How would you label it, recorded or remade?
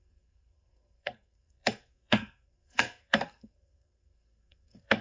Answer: remade